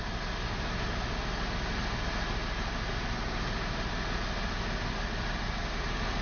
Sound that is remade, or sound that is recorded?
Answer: recorded